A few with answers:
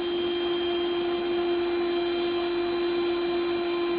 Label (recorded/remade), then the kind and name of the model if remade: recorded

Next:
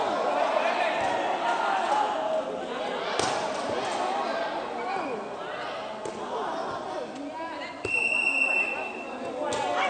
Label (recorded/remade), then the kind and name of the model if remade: recorded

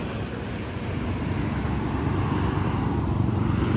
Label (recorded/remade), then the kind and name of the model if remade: recorded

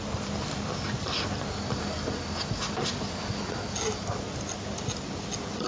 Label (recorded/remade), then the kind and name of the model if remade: recorded